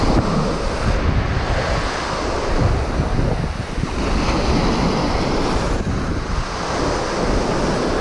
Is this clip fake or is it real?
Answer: real